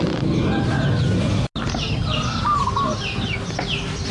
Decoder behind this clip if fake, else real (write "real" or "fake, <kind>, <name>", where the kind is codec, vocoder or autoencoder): real